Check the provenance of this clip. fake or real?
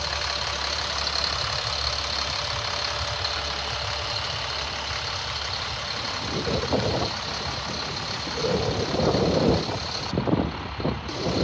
real